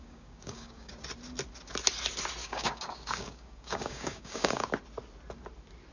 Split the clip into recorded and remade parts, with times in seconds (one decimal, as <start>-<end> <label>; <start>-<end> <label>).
0.0-0.9 remade; 0.9-2.4 recorded; 2.4-4.7 remade; 4.7-5.9 recorded